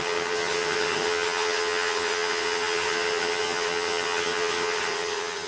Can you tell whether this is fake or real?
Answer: fake